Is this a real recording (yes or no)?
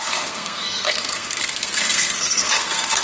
no